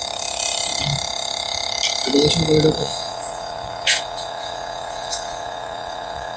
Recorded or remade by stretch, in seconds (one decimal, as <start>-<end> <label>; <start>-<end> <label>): 0.0-2.8 recorded; 2.8-6.4 remade